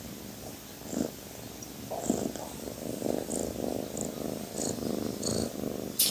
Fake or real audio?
real